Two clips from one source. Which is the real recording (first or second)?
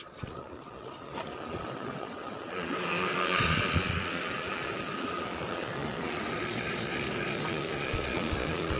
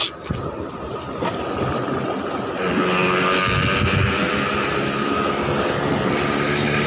second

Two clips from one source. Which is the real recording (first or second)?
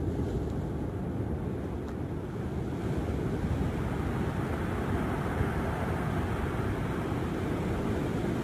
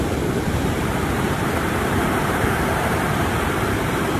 first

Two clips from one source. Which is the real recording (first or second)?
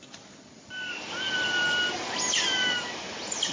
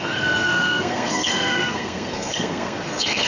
first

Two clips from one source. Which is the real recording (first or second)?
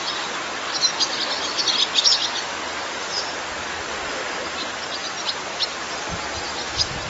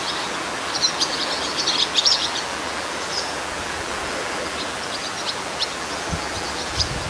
first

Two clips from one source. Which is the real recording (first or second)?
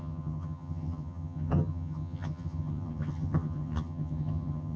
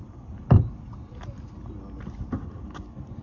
second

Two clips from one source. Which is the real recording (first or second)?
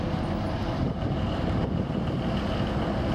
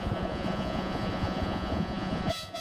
first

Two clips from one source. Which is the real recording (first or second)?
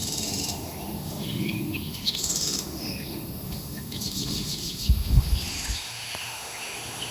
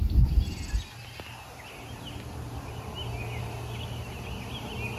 second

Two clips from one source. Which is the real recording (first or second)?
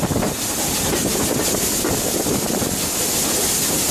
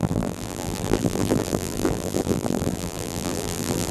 first